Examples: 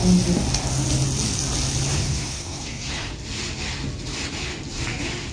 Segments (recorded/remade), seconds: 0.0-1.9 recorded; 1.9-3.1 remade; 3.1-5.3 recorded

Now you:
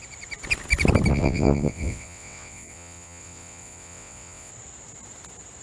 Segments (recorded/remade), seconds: 0.0-1.1 recorded; 1.1-4.5 remade; 4.5-5.6 recorded